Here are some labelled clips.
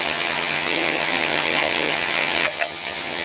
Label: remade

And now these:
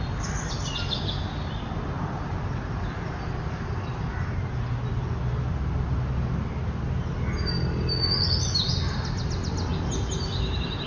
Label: recorded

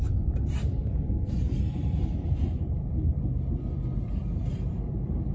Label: recorded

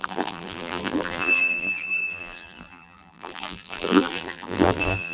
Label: remade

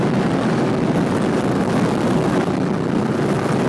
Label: recorded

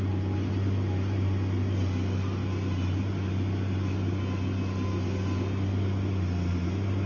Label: recorded